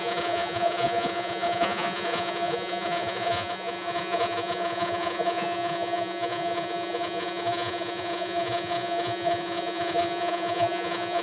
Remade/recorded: remade